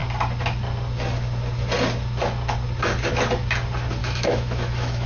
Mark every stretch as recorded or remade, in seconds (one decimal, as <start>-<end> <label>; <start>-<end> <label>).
0.0-4.0 recorded; 4.0-5.1 remade